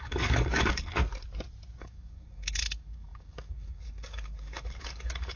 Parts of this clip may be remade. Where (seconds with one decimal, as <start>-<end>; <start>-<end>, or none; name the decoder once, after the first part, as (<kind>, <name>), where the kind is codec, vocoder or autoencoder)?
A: 0.0-0.9 (codec, DAC); 1.8-5.4